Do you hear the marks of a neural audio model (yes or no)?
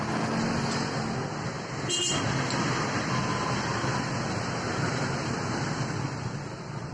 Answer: no